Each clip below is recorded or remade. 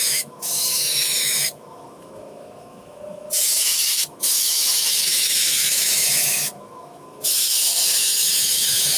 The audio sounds remade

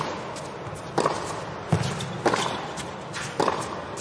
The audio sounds recorded